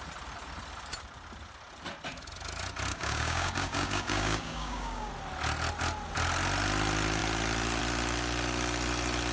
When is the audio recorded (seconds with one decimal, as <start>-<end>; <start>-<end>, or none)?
0.0-2.9; 5.1-9.3